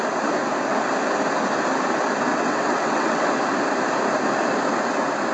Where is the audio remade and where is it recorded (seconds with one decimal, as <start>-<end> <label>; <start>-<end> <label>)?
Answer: 0.0-2.3 recorded; 2.3-3.3 remade; 3.3-5.3 recorded